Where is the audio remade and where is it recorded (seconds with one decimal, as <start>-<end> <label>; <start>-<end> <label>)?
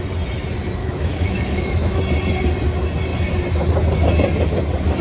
0.0-0.8 recorded; 0.8-2.0 remade; 2.0-5.0 recorded